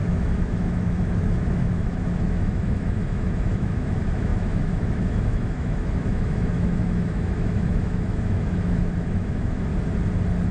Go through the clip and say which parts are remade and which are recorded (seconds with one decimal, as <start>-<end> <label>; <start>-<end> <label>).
0.0-9.7 remade; 9.7-10.5 recorded